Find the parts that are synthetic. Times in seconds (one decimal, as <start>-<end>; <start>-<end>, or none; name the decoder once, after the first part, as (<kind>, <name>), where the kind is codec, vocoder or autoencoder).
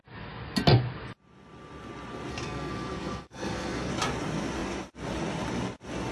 2.3-3.9 (codec, SNAC)